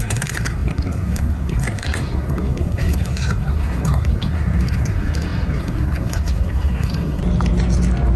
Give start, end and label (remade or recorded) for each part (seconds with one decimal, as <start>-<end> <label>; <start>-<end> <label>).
0.0-7.2 remade; 7.2-8.2 recorded